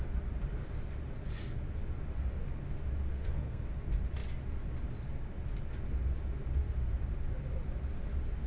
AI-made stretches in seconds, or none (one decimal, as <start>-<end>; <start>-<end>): 3.1-3.7